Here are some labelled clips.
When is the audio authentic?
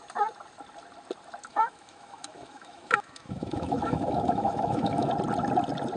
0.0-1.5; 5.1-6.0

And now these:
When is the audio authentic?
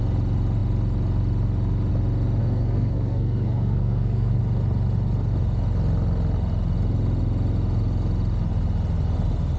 0.0-2.4; 4.4-9.6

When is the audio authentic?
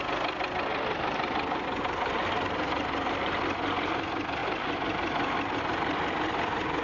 none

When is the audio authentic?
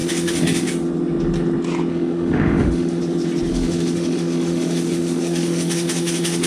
0.7-1.9; 3.0-3.5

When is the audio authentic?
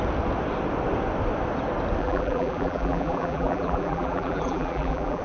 0.0-2.0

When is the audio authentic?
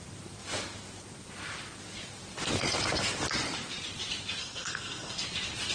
0.0-4.4; 5.2-5.7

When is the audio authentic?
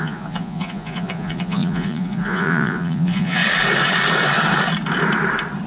3.4-5.7